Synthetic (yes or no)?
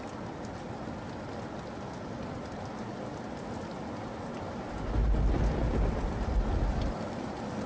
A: no